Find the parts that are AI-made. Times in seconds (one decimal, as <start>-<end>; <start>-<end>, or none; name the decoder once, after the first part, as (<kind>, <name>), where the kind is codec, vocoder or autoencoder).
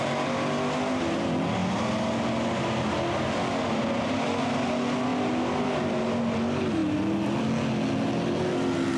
none